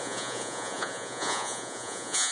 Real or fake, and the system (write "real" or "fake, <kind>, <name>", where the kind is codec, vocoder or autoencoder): fake, vocoder, Vocos